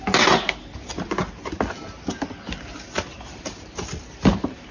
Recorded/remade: recorded